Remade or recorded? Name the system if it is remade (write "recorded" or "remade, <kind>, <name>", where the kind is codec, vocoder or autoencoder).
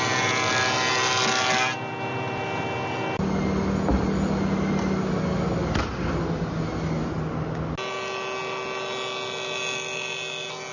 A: recorded